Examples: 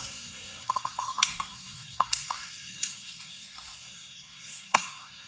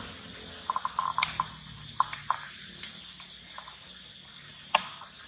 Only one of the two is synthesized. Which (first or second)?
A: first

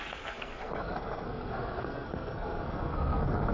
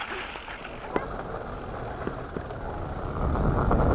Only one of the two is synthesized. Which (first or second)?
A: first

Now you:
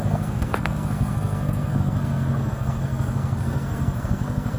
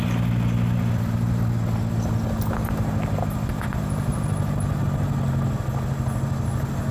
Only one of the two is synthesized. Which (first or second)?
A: first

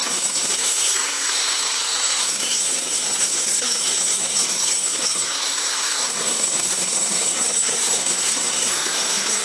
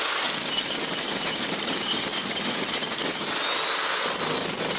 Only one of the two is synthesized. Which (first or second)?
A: first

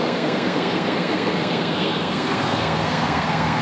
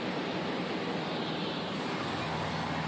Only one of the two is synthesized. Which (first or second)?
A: first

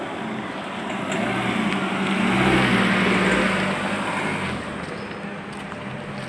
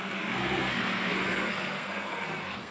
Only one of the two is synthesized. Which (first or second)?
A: second